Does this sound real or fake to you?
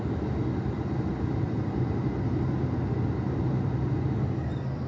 real